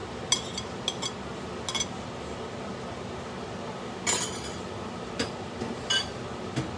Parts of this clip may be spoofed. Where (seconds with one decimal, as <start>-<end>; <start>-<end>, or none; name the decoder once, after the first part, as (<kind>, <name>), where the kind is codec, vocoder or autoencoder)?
none